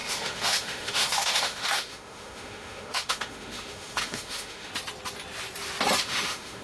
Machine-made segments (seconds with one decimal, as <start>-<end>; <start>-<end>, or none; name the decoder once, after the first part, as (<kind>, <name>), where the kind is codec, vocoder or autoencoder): 0.0-4.7 (autoencoder, DAC-VAE); 6.0-6.6